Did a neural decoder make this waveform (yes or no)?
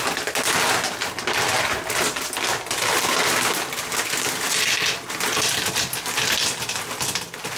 no